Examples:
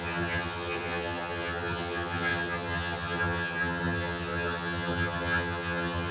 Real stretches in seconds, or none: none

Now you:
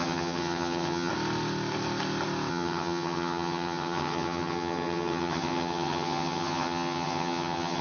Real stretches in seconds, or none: 1.1-2.5

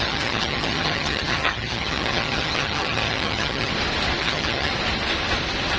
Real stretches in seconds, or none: 3.7-4.2; 4.7-5.8

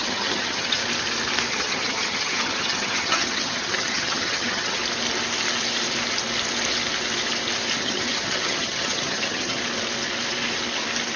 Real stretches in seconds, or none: 0.8-1.5; 4.8-7.8; 9.6-11.2

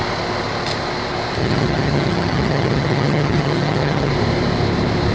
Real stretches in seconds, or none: 0.0-1.4; 4.1-5.1

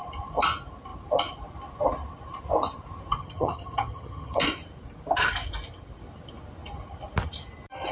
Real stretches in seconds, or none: 0.0-3.2; 4.4-7.9

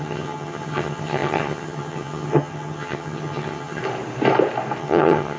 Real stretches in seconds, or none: 3.8-4.8

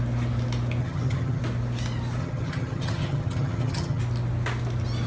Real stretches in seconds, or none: 0.0-0.8; 1.4-2.2; 4.0-5.1